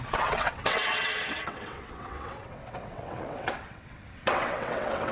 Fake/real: fake